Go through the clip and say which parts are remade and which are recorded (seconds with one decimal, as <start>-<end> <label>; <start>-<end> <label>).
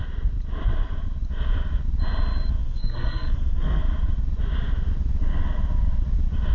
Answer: 0.0-2.6 recorded; 2.6-3.8 remade; 3.8-6.5 recorded